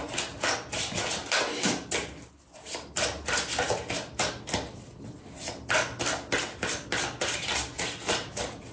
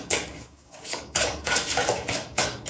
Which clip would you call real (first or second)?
first